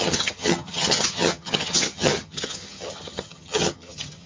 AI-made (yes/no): yes